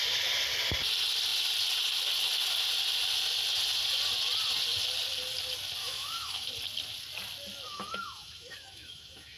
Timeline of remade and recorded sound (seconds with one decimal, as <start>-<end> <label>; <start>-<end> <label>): 0.0-5.8 recorded; 5.8-6.5 remade; 6.5-7.7 recorded; 7.7-9.4 remade